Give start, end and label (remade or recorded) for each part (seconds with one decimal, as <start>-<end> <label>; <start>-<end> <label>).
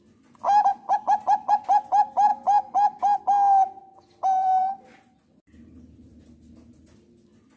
0.0-7.6 recorded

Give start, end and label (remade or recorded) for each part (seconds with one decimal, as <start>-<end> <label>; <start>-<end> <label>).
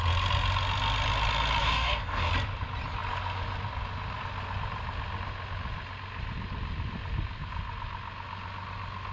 0.0-1.6 recorded; 1.6-2.3 remade; 2.3-9.1 recorded